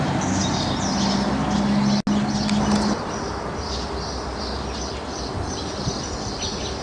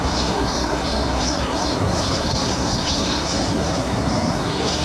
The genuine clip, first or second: first